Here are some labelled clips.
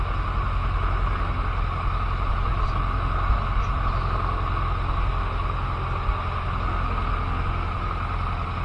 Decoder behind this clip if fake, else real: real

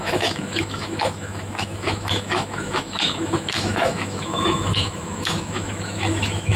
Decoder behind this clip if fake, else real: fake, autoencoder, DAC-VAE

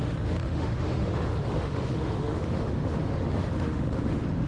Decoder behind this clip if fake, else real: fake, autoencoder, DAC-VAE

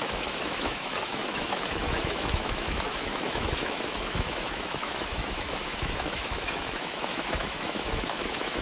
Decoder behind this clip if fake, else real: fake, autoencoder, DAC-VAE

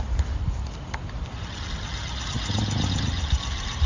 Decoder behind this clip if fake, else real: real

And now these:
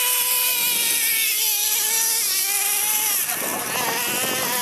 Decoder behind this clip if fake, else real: real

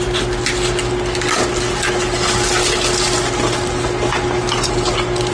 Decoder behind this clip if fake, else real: real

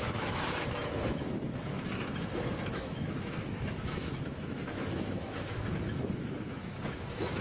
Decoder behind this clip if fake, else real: fake, autoencoder, DAC-VAE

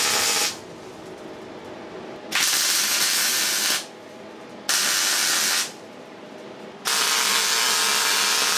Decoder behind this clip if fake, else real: real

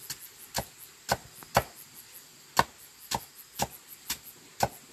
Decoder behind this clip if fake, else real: real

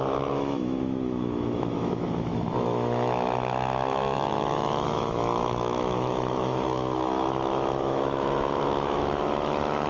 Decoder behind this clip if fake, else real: fake, autoencoder, DAC-VAE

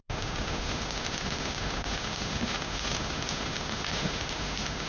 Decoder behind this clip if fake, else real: fake, autoencoder, DAC-VAE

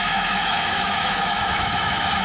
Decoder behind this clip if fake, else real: fake, autoencoder, DAC-VAE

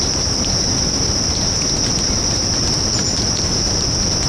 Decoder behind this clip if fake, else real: real